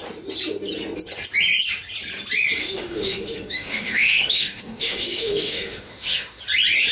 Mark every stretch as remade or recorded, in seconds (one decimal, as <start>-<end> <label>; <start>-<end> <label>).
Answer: 0.0-2.6 recorded; 2.6-6.4 remade; 6.4-6.9 recorded